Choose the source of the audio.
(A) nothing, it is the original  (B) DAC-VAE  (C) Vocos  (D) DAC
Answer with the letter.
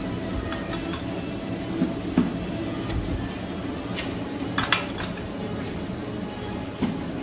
A